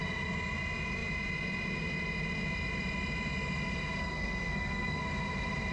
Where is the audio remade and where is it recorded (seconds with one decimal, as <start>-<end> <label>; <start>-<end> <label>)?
0.0-4.0 recorded; 4.0-5.0 remade; 5.0-5.7 recorded